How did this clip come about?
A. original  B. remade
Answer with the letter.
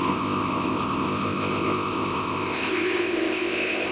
B